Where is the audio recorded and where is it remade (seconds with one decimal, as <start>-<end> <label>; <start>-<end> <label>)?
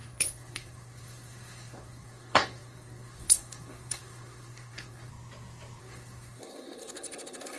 0.0-5.1 remade; 5.1-5.8 recorded; 5.8-7.6 remade